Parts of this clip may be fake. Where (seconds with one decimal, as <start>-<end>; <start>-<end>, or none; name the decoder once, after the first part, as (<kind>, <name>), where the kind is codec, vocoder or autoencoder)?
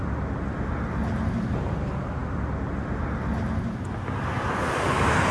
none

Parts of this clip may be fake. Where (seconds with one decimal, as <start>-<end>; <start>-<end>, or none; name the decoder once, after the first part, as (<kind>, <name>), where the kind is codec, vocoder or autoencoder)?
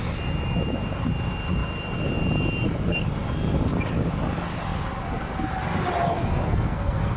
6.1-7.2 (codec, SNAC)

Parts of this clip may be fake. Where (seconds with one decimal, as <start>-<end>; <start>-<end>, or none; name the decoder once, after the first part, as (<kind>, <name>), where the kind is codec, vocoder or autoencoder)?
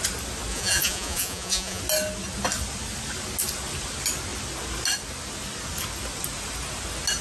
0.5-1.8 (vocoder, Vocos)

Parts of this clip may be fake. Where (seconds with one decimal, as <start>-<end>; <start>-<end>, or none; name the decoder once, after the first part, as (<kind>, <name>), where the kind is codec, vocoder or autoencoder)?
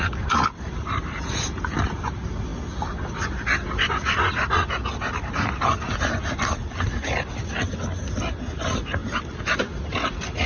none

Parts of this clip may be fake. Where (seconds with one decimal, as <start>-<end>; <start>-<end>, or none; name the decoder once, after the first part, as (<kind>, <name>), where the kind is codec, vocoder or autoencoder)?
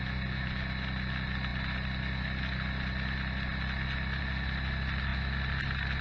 none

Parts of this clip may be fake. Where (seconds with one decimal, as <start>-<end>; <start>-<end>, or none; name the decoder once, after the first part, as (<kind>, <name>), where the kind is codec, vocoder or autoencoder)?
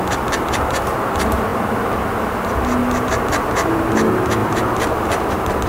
2.8-3.8 (vocoder, BigVGAN v2); 4.4-5.3